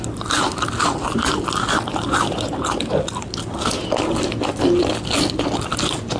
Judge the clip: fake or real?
real